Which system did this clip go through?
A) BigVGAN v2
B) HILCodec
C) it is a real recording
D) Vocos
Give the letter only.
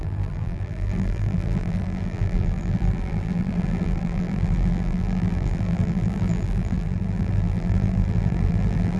A